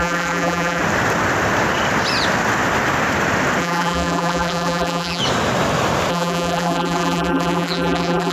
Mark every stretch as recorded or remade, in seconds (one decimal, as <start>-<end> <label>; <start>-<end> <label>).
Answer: 0.0-0.8 remade; 0.8-3.6 recorded; 3.6-5.2 remade; 5.2-6.1 recorded; 6.1-8.3 remade

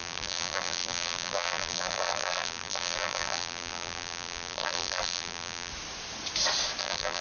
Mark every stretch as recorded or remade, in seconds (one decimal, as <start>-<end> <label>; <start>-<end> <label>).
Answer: 0.0-5.7 remade; 5.7-6.8 recorded; 6.8-7.2 remade

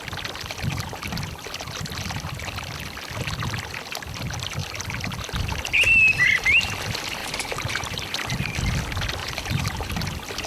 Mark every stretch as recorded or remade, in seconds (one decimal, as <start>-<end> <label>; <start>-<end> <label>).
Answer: 0.0-7.2 recorded; 7.2-8.0 remade; 8.0-9.2 recorded; 9.2-9.9 remade; 9.9-10.5 recorded

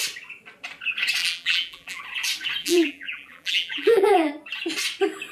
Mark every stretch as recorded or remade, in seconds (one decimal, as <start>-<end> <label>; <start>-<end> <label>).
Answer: 0.0-1.2 recorded; 1.2-2.0 remade; 2.0-2.6 recorded; 2.6-4.3 remade; 4.3-5.3 recorded

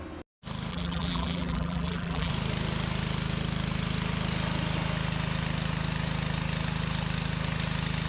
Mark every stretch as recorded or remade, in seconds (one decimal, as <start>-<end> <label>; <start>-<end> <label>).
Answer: 0.0-0.7 recorded; 0.7-2.3 remade; 2.3-8.1 recorded